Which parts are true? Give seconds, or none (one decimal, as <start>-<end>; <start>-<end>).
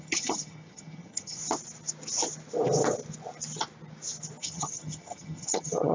1.4-4.4